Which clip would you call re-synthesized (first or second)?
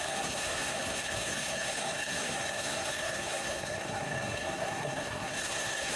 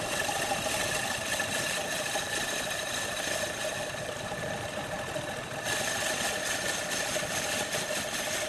first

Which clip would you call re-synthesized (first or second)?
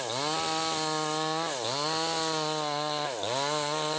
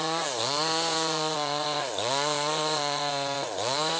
second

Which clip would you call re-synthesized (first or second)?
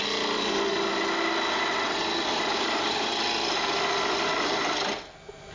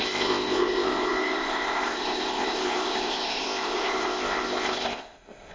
second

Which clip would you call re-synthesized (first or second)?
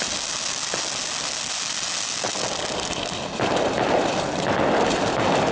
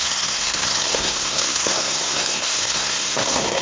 second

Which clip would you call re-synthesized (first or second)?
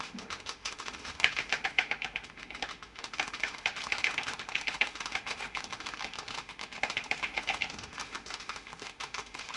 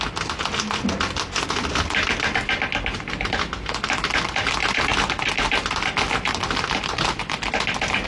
first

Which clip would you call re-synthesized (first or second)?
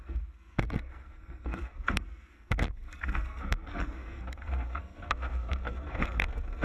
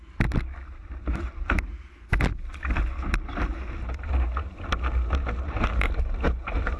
first